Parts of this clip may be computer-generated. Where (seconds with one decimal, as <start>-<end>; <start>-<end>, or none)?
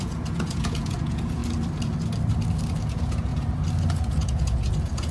0.0-1.4; 2.8-3.3; 3.9-5.1